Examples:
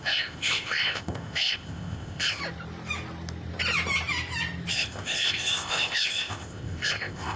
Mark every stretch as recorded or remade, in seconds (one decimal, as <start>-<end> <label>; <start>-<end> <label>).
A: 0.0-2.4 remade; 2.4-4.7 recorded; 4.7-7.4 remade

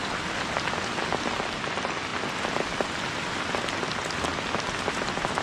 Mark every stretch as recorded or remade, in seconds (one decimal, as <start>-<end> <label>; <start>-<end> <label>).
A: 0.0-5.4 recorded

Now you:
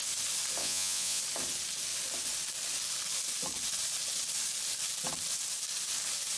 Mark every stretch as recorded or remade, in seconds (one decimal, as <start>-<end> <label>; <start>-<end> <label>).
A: 0.0-0.6 recorded; 0.6-1.2 remade; 1.2-6.4 recorded

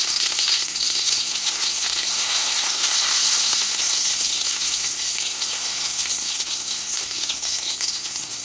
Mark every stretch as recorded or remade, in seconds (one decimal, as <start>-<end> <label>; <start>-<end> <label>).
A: 0.0-8.4 remade

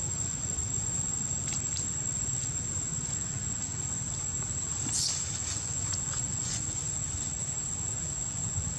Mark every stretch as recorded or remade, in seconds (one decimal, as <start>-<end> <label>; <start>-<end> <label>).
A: 0.0-0.6 remade; 0.6-5.5 recorded; 5.5-6.8 remade; 6.8-8.0 recorded; 8.0-8.8 remade